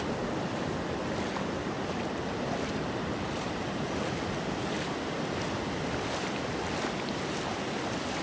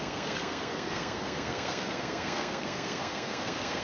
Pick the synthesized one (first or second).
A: second